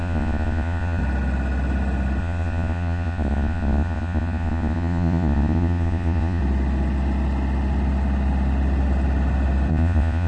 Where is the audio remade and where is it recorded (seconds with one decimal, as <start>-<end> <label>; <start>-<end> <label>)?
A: 0.0-1.0 remade; 1.0-2.2 recorded; 2.2-6.4 remade; 6.4-9.7 recorded; 9.7-10.3 remade